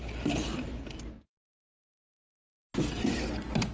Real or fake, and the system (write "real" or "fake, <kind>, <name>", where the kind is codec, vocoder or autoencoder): real